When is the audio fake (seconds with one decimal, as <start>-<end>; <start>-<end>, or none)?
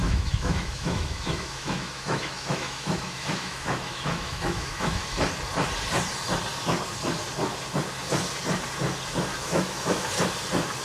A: 0.0-5.0; 9.3-10.1